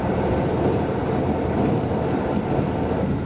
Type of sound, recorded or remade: recorded